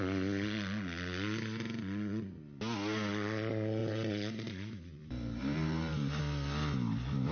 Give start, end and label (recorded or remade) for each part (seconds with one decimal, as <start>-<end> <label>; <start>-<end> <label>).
0.0-3.8 recorded; 3.8-6.2 remade; 6.2-7.3 recorded